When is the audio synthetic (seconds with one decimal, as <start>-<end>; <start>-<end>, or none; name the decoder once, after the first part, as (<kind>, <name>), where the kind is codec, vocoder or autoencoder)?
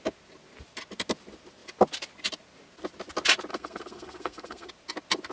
3.5-4.7 (codec, SNAC)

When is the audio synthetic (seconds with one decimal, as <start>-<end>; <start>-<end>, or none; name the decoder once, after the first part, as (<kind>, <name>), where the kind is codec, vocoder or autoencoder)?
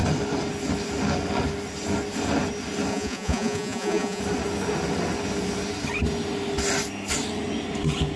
2.9-4.2 (vocoder, Vocos)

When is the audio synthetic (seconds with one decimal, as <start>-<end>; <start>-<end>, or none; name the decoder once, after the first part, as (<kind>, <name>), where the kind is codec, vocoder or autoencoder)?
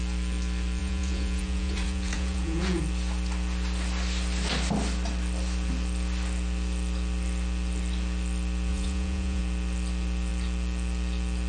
0.8-2.8 (vocoder, Vocos); 8.7-9.4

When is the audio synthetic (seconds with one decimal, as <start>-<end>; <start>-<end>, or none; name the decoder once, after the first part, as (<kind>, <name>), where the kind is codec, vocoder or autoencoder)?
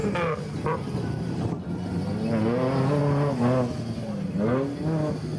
0.0-1.7 (vocoder, BigVGAN v2)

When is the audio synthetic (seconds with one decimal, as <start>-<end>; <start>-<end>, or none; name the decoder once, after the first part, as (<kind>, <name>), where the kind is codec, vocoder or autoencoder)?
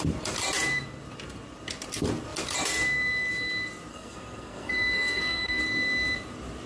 3.9-5.6 (codec, SNAC)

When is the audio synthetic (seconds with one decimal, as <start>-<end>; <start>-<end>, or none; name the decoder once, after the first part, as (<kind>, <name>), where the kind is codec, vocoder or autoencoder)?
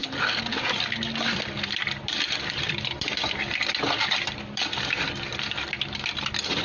none